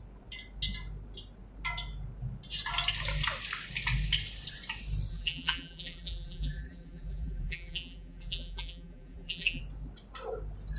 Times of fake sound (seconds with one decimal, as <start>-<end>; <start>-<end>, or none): 5.1-9.6